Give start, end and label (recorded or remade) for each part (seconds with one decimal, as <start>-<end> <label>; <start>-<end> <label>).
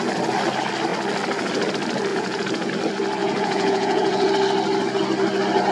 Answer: 0.0-2.1 recorded; 2.1-2.7 remade; 2.7-3.2 recorded; 3.2-4.3 remade; 4.3-5.7 recorded